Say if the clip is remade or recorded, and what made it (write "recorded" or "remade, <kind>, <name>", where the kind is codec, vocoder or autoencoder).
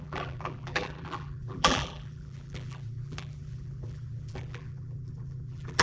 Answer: remade, vocoder, BigVGAN v2